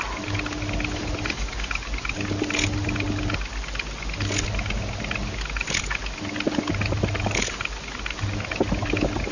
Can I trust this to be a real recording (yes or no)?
yes